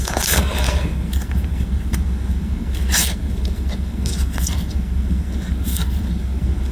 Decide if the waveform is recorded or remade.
remade